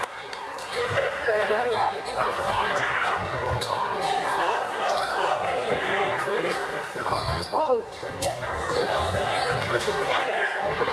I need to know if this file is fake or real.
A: fake